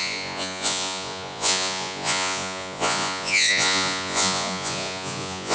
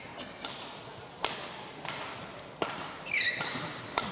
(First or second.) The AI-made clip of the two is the first